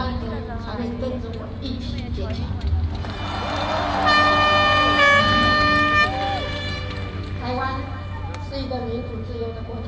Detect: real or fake real